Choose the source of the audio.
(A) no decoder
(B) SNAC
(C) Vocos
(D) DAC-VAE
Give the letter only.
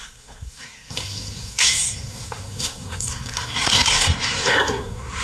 B